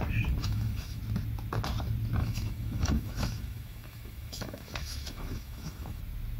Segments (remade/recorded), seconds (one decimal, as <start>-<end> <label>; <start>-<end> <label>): 0.0-0.4 recorded; 0.4-1.0 remade; 1.0-2.2 recorded; 2.2-6.0 remade; 6.0-6.4 recorded